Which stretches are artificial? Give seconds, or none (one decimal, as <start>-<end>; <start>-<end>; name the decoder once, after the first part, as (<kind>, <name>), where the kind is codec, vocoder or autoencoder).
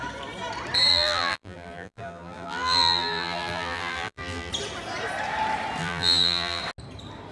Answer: 0.9-4.5 (vocoder, BigVGAN v2); 5.8-6.6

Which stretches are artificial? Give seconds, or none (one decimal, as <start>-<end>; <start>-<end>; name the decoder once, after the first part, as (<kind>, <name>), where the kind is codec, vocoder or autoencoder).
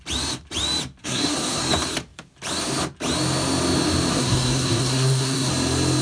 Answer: 1.0-1.6 (codec, SNAC); 4.1-5.5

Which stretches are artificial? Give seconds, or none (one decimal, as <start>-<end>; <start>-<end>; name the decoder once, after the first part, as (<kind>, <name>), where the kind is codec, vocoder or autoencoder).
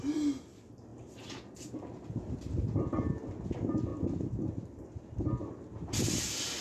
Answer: none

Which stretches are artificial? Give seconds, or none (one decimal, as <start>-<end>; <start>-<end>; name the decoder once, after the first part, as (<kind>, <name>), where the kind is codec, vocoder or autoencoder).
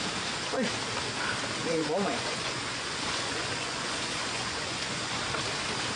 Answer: 1.6-5.2 (vocoder, Vocos)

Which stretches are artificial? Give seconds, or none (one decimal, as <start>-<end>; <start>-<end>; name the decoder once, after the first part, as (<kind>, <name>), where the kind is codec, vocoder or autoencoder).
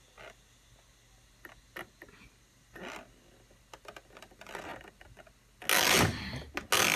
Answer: none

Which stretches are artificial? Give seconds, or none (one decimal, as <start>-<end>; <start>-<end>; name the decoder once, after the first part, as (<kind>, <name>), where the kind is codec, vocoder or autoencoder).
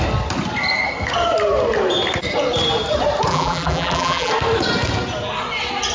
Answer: 3.3-4.3 (vocoder, BigVGAN v2)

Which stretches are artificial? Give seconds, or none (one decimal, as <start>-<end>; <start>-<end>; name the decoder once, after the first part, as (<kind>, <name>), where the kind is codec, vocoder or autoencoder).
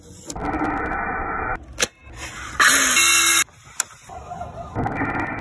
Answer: none